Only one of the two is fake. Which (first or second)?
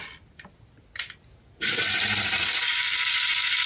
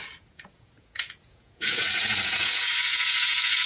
second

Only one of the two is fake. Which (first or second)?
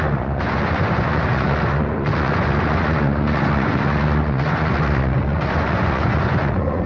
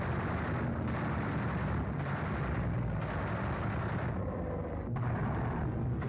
first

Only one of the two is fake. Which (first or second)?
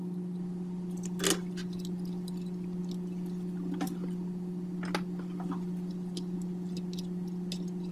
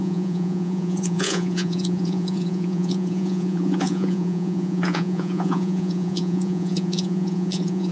second